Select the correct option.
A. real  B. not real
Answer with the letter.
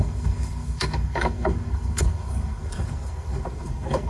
B